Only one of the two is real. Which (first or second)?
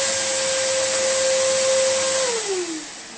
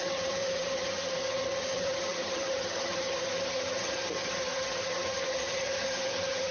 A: first